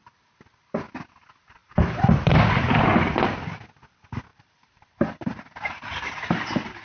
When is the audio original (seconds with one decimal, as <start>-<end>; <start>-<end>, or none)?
0.0-1.6; 2.4-4.3; 5.4-6.8